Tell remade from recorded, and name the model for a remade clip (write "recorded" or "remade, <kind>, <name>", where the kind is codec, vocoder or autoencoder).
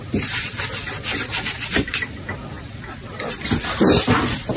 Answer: remade, vocoder, BigVGAN v2